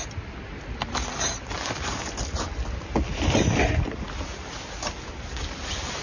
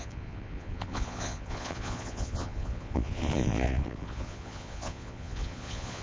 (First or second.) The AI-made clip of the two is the second